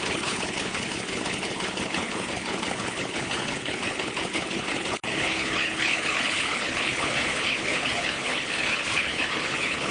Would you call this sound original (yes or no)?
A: no